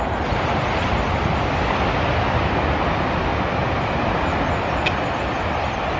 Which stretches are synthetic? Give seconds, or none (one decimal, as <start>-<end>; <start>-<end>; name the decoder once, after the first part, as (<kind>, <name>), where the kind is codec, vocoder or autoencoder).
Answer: none